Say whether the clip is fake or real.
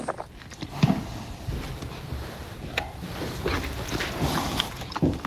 fake